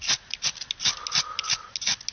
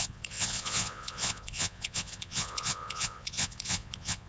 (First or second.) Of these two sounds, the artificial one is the second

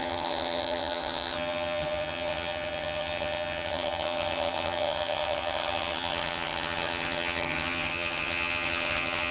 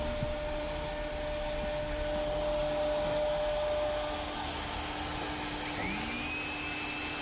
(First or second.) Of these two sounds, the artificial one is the first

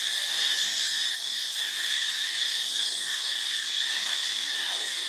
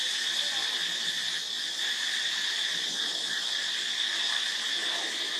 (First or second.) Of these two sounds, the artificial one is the first